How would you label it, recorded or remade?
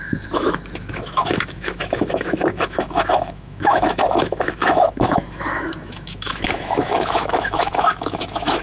remade